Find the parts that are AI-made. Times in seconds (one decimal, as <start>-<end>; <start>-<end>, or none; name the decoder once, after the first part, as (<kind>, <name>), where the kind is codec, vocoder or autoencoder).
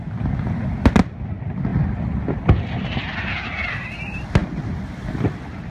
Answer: none